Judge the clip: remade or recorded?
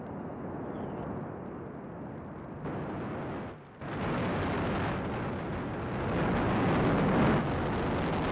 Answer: recorded